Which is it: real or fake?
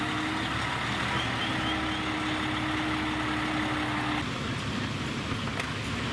real